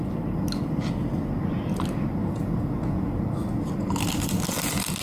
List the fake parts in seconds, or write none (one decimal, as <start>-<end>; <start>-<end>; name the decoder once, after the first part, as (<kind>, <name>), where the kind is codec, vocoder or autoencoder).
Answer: 2.2-3.1 (vocoder, Vocos)